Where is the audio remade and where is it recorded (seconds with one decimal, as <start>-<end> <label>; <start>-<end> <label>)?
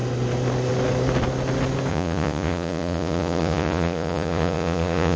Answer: 0.0-1.9 recorded; 1.9-5.2 remade